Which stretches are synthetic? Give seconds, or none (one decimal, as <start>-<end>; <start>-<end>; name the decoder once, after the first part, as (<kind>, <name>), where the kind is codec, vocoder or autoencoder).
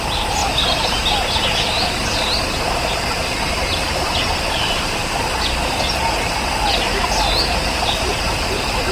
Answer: 0.0-0.4 (vocoder, BigVGAN v2); 3.5-5.0; 6.6-8.9